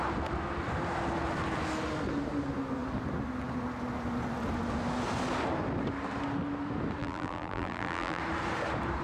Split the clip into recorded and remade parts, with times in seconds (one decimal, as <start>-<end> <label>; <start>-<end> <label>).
0.0-7.0 recorded; 7.0-8.2 remade; 8.2-9.0 recorded